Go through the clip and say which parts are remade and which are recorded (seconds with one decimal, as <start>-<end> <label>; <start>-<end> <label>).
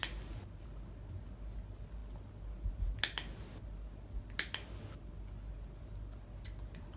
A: 0.0-7.0 recorded